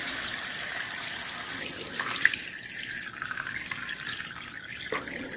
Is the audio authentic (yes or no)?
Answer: yes